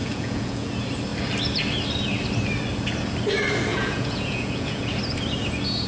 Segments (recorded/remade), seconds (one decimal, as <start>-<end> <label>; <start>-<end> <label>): 0.0-0.7 remade; 0.7-3.7 recorded; 3.7-5.0 remade; 5.0-5.9 recorded